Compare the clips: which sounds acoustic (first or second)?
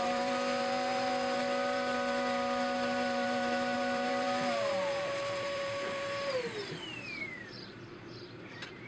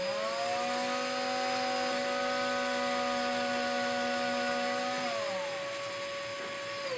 second